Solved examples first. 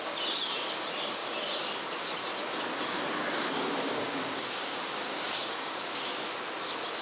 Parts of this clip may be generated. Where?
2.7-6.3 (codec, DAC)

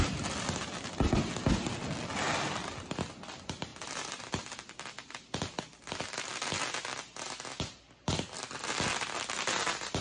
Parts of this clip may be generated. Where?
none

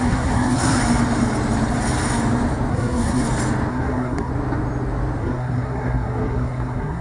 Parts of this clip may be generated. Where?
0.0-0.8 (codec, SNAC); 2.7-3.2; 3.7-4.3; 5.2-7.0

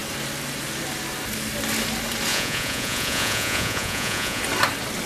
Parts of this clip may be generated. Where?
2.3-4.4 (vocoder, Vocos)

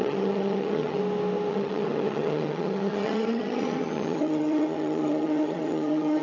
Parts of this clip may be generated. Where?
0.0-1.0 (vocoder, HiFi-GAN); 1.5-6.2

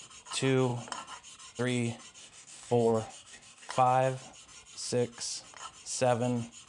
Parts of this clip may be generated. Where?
2.2-3.7 (codec, DAC)